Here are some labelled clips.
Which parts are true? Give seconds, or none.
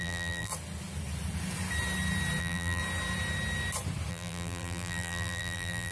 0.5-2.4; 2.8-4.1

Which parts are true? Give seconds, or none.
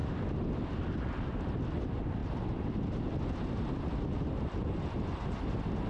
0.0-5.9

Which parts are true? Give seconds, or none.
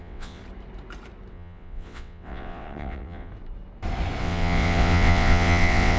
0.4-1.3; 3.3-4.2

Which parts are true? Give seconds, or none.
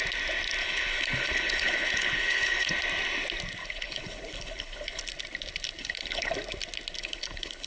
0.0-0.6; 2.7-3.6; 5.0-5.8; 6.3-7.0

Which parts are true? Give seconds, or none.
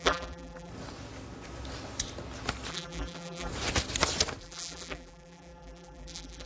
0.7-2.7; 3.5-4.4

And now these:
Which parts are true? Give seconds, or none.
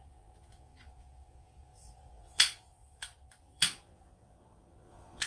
none